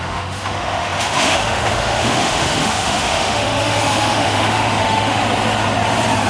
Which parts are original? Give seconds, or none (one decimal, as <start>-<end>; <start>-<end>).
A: 5.2-6.3